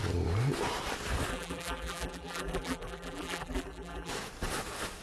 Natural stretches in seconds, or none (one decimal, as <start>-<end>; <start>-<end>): 0.0-1.3; 4.1-5.0